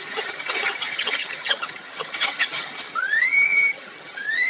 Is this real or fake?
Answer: fake